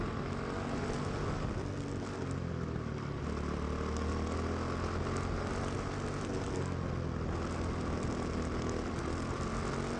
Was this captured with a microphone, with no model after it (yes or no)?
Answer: yes